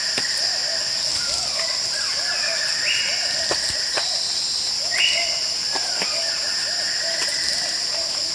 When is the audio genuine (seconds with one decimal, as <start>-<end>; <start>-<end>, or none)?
3.9-8.3